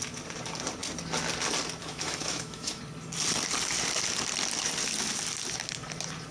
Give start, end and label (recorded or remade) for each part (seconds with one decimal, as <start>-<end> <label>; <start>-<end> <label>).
0.0-1.8 recorded; 1.8-2.8 remade; 2.8-6.3 recorded